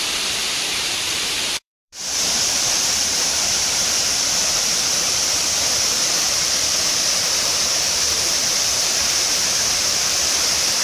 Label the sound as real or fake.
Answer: fake